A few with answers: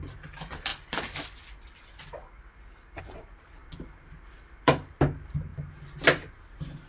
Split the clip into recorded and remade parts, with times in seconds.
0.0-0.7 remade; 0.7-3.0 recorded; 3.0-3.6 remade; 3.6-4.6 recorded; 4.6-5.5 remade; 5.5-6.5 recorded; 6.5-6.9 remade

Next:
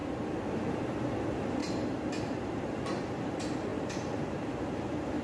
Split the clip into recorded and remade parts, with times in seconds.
0.0-1.0 recorded; 1.0-1.6 remade; 1.6-2.4 recorded; 2.4-5.2 remade

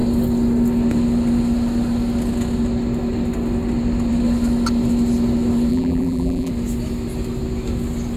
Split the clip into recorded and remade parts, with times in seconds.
0.0-5.7 recorded; 5.7-6.5 remade; 6.5-8.2 recorded